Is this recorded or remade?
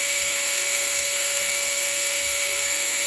remade